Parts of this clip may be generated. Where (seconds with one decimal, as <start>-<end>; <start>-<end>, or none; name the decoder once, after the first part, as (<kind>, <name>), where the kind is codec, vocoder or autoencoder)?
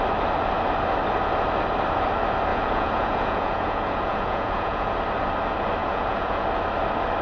2.5-4.9 (vocoder, Vocos); 5.8-6.4